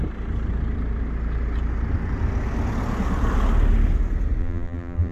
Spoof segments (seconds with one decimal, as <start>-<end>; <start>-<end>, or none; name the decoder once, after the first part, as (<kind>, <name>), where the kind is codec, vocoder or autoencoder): 4.4-5.1 (vocoder, BigVGAN v2)